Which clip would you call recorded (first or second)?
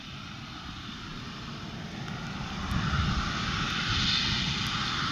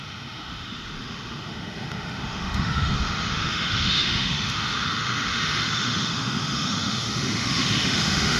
first